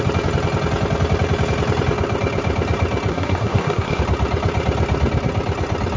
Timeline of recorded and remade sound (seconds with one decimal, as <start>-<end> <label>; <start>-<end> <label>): 0.0-3.1 recorded; 3.1-4.0 remade; 4.0-6.0 recorded